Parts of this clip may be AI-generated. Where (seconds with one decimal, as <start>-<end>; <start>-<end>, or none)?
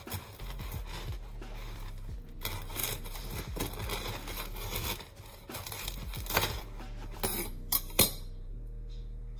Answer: 8.5-9.0